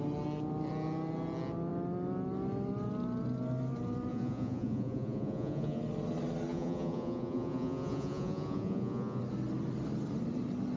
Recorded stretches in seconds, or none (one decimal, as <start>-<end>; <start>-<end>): 0.0-4.1; 5.8-6.5; 9.2-10.8